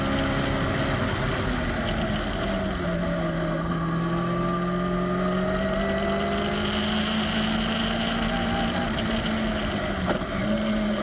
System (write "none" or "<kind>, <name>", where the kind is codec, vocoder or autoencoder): none